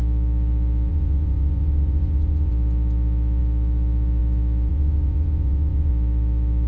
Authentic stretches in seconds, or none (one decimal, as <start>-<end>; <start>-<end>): 0.0-0.9; 2.5-4.7; 5.9-6.7